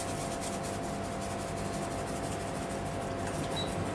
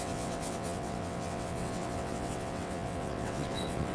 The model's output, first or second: second